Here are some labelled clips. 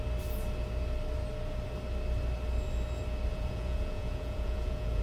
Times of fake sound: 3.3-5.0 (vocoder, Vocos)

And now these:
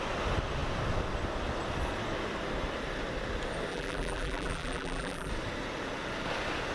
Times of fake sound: 3.7-5.3 (vocoder, BigVGAN v2)

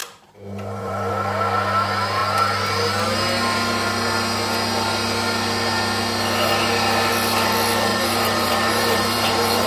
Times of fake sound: 0.0-1.1 (vocoder, BigVGAN v2); 7.9-9.7

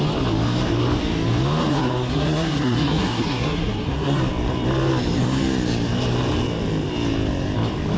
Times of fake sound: 1.7-4.2 (codec, SNAC)

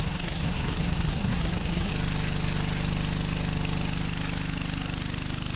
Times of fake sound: 0.0-1.9 (codec, SNAC)

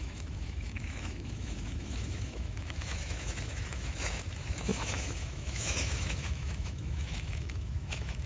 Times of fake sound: 0.0-8.3 (autoencoder, DAC-VAE)

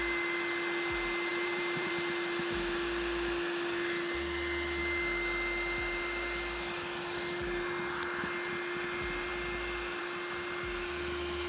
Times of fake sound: 1.3-1.9 (vocoder, BigVGAN v2)